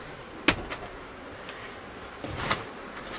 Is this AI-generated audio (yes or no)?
no